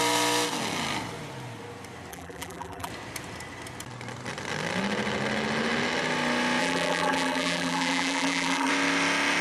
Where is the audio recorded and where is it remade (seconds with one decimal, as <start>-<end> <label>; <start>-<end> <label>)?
0.0-2.1 recorded; 2.1-2.9 remade; 2.9-6.6 recorded; 6.6-8.7 remade; 8.7-9.4 recorded